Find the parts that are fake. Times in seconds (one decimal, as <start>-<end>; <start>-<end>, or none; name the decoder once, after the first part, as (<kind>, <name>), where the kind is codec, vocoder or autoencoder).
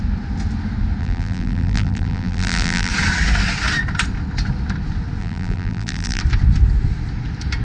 1.0-2.9 (vocoder, BigVGAN v2); 5.2-6.2